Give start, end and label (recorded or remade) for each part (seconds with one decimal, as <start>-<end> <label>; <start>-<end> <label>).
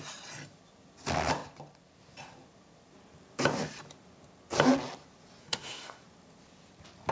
0.0-5.4 recorded; 5.4-6.0 remade; 6.0-7.1 recorded